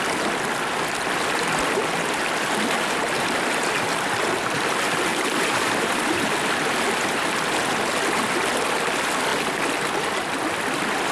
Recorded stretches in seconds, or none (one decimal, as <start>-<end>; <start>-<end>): 0.0-5.1; 6.3-11.1